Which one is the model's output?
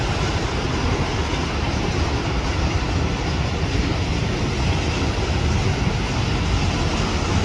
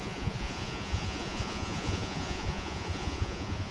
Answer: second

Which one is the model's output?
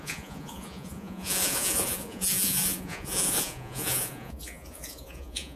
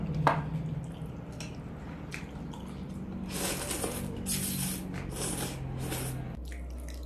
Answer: first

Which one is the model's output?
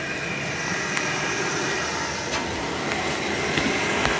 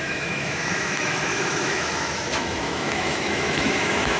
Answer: second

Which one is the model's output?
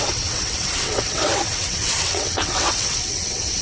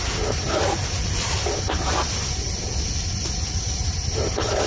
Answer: first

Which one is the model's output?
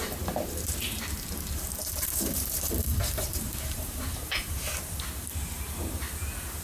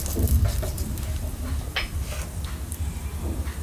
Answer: first